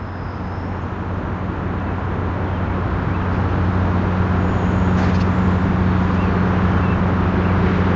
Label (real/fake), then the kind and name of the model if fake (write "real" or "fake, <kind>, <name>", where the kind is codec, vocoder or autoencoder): real